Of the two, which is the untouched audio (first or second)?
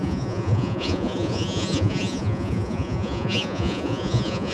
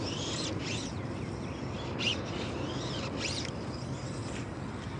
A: second